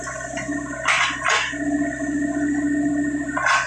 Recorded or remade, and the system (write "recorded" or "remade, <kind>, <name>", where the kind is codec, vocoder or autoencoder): remade, vocoder, BigVGAN v2